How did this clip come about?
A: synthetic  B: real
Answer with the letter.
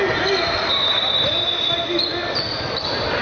B